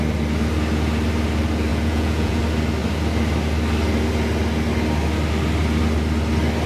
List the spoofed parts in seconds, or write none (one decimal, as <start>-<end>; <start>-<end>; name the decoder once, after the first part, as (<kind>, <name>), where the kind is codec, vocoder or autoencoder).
1.7-2.4 (vocoder, Vocos)